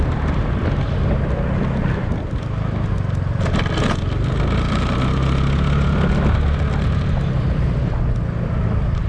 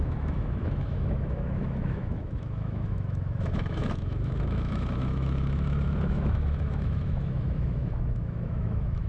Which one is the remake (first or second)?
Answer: second